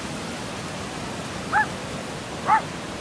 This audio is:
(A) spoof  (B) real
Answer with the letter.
B